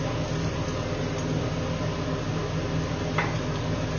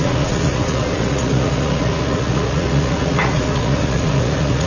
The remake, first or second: second